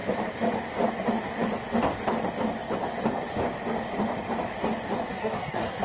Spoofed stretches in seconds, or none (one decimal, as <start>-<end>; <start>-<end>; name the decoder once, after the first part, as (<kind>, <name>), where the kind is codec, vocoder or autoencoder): 5.2-5.8 (codec, SNAC)